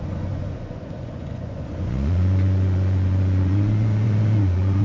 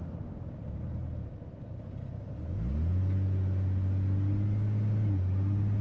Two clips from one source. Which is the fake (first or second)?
first